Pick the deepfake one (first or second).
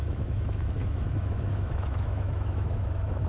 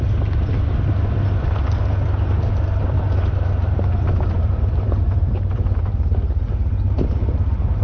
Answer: first